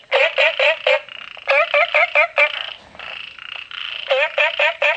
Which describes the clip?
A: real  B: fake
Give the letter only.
A